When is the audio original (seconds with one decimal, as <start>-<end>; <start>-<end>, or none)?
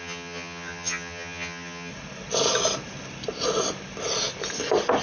1.9-5.0